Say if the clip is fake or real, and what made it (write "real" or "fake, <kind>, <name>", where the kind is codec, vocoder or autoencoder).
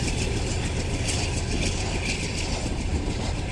real